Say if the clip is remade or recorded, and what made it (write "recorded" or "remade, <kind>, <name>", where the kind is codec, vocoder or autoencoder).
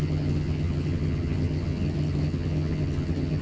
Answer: remade, vocoder, HiFi-GAN